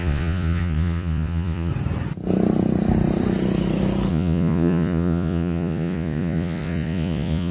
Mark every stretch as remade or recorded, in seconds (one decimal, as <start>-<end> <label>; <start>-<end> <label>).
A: 0.0-1.7 remade; 1.7-4.1 recorded; 4.1-7.5 remade

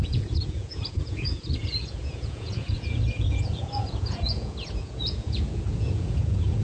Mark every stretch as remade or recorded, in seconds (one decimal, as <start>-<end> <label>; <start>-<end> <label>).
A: 0.0-6.6 remade

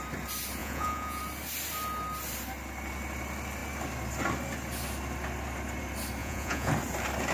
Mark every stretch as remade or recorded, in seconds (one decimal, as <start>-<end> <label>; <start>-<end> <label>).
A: 0.0-0.6 recorded; 0.6-1.2 remade; 1.2-6.2 recorded; 6.2-6.7 remade; 6.7-7.3 recorded

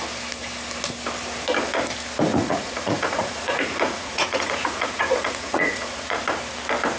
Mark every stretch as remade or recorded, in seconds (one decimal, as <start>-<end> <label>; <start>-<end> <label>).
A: 0.0-2.3 recorded; 2.3-6.2 remade; 6.2-7.0 recorded